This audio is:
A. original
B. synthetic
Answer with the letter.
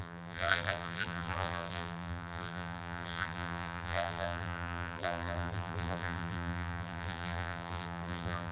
B